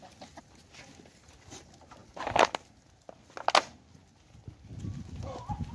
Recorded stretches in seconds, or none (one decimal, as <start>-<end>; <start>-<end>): 0.0-5.7